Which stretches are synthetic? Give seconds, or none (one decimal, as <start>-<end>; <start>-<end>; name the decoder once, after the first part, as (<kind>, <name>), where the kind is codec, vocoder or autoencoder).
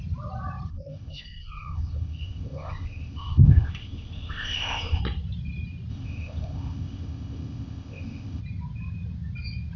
0.7-5.0 (codec, ZipCodec); 5.9-8.4